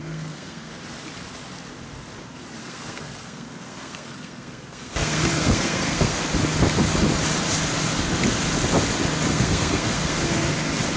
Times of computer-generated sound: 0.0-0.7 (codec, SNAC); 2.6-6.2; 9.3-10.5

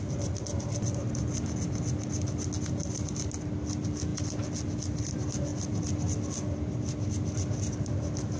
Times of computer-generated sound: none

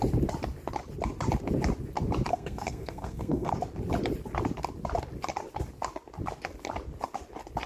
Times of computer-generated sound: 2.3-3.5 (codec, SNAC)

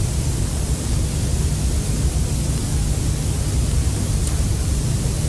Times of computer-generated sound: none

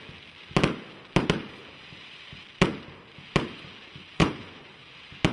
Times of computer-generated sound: 4.1-4.7 (vocoder, Vocos)

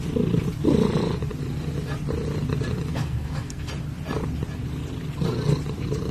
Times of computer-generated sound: 2.9-3.7 (codec, SNAC)

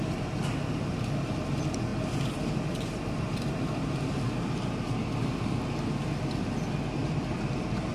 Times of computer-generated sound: 1.9-5.1 (vocoder, BigVGAN v2); 7.0-7.9

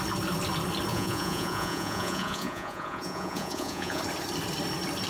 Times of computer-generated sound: 0.9-4.0 (vocoder, Vocos)